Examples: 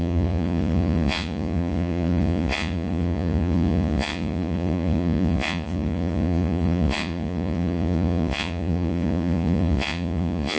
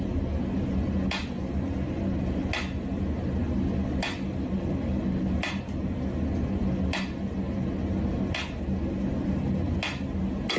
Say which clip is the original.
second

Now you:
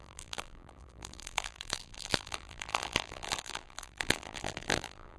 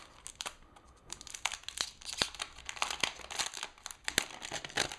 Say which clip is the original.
second